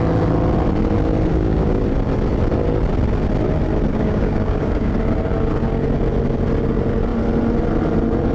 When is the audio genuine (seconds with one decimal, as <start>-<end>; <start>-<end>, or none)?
0.0-1.3; 1.8-3.9; 4.9-8.3